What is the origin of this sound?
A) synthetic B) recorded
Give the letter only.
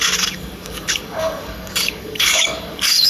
A